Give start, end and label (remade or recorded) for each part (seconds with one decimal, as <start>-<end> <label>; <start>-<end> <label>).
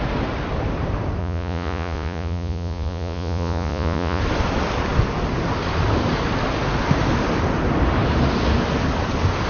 0.0-1.2 recorded; 1.2-4.2 remade; 4.2-9.5 recorded